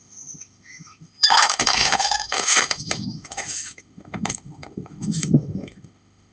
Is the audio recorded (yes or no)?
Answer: no